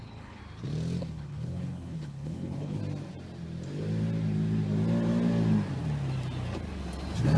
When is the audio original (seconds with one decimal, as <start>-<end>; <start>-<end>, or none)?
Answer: 0.4-1.0; 2.8-7.4